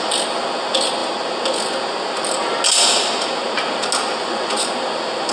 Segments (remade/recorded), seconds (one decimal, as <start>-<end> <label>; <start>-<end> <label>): 0.0-4.2 recorded; 4.2-4.7 remade; 4.7-5.3 recorded